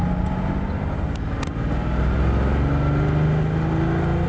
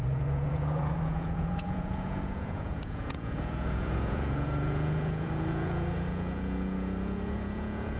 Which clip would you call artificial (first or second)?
second